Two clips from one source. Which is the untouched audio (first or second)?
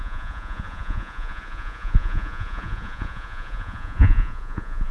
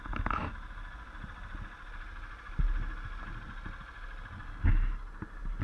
second